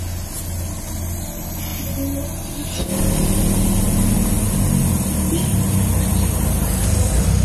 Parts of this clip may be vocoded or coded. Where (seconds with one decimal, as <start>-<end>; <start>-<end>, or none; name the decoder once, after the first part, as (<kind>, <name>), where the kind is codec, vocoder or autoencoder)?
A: none